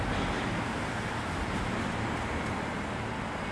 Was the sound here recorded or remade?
recorded